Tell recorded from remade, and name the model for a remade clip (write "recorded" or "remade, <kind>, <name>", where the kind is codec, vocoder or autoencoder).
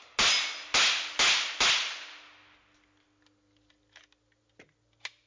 recorded